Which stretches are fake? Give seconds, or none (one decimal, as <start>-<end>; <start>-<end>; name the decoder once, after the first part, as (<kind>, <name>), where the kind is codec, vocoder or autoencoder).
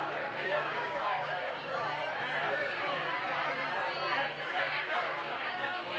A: 0.0-1.7 (codec, DAC); 2.5-3.0; 4.4-6.0